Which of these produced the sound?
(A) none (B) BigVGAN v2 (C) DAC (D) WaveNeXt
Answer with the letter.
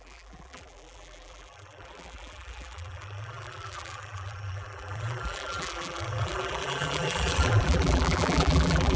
B